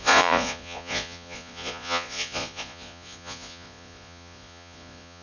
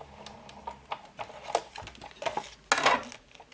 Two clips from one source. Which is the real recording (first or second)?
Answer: second